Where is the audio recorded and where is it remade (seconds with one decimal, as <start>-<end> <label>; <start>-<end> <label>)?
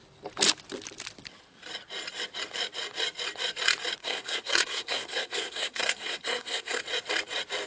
0.0-4.0 recorded; 4.0-6.8 remade; 6.8-7.7 recorded